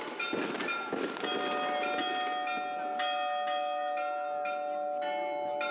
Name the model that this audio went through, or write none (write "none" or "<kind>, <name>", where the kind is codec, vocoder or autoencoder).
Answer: none